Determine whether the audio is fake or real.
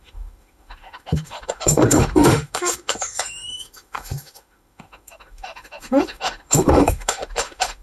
fake